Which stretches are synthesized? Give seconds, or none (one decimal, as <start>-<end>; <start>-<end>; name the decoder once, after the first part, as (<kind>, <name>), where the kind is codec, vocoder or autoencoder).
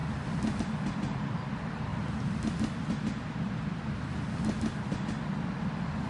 none